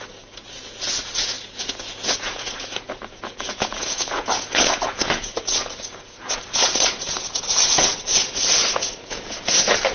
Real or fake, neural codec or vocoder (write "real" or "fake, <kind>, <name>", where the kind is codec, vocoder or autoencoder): fake, vocoder, Vocos